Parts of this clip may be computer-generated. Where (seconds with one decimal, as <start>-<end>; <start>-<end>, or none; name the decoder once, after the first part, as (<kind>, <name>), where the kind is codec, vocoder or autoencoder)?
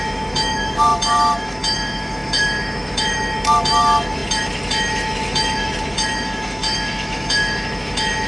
0.0-8.3 (autoencoder, DAC-VAE)